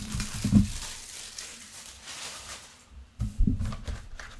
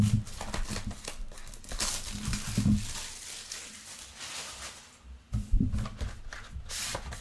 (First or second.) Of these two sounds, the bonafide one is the second